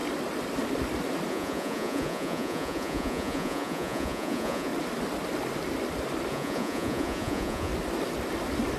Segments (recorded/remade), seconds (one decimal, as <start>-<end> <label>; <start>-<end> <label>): 0.0-1.3 recorded; 1.3-4.7 remade; 4.7-6.3 recorded; 6.3-7.7 remade; 7.7-8.8 recorded